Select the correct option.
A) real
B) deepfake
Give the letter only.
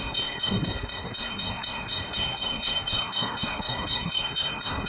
B